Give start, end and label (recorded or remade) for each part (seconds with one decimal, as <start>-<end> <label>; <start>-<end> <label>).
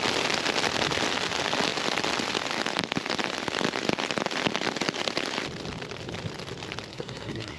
0.0-6.9 recorded; 6.9-7.6 remade